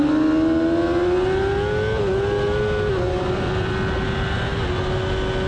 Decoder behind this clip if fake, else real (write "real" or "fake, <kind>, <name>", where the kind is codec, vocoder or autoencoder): real